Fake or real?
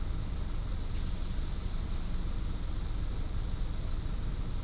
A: real